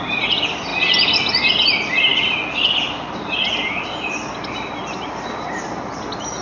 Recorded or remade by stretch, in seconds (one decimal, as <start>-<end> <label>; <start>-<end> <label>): 0.0-6.4 recorded